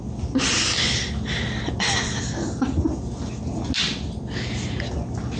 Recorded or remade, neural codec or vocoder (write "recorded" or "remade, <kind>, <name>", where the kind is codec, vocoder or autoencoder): recorded